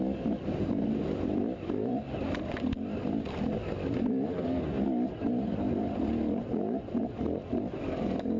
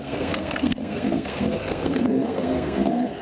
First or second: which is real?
first